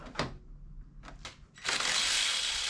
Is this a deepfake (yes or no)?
no